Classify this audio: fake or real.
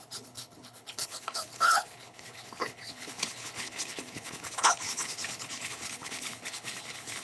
fake